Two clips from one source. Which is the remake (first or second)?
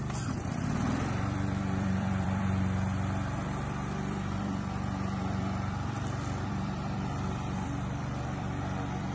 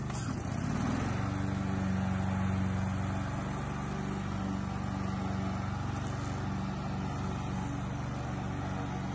first